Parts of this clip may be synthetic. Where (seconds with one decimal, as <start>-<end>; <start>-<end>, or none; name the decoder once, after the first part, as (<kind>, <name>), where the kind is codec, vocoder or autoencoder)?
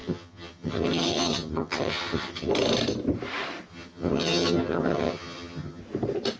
0.0-2.5 (vocoder, HiFi-GAN); 3.7-5.8